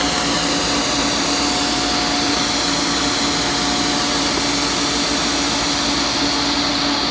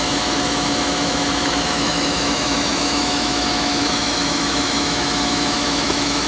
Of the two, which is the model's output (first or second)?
second